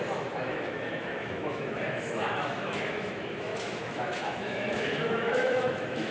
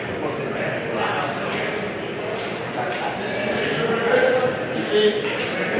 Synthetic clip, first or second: first